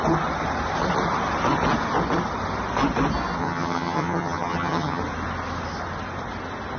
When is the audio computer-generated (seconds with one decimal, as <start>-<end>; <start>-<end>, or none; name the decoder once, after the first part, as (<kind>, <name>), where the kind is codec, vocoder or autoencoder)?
3.4-5.0 (vocoder, HiFi-GAN)